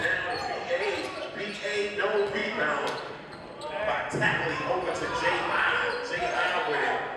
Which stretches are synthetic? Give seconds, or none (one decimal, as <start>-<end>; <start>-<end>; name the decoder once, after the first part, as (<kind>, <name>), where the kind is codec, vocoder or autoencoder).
0.0-1.6 (vocoder, BigVGAN v2); 2.4-5.9